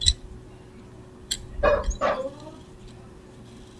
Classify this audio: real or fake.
real